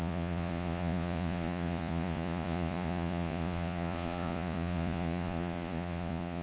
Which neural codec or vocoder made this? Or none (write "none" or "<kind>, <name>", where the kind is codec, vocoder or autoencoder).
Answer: vocoder, Vocos